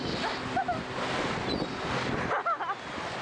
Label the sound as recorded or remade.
recorded